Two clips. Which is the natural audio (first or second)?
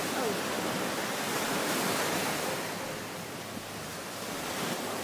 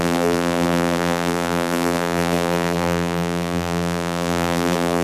first